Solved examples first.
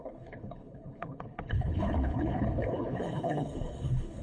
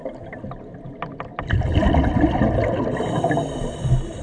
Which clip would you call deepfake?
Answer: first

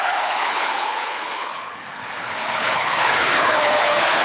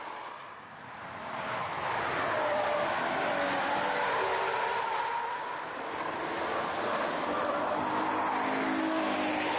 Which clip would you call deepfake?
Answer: first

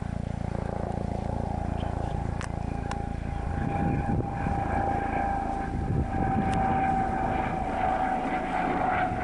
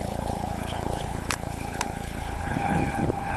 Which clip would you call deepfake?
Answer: second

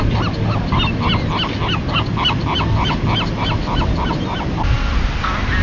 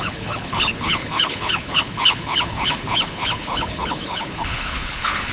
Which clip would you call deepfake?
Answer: second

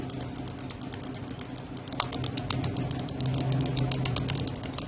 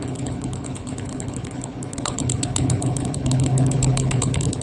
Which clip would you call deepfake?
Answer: second